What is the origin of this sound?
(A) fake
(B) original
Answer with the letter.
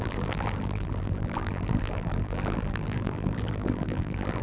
A